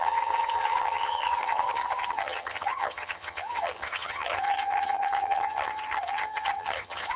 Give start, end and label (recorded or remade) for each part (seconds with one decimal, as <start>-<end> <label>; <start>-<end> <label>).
0.0-7.2 remade